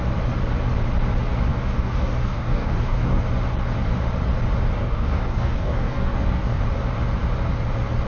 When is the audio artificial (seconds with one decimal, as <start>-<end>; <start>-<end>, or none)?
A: 1.5-3.2; 4.8-6.6